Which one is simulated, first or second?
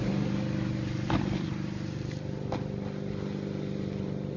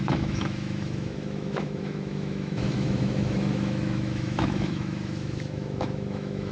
second